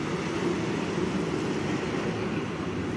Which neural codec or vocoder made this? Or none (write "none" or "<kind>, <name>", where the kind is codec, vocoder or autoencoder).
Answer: none